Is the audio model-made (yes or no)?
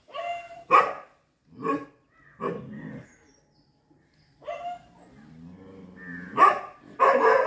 no